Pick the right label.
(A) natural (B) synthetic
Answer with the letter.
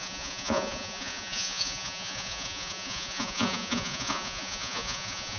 B